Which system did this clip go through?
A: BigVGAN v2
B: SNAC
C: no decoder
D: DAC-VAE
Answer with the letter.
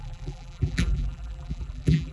A